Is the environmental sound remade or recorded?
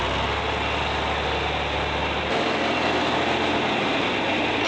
recorded